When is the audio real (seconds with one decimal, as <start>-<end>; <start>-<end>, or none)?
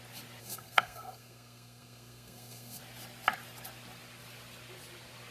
0.0-0.4; 2.8-5.3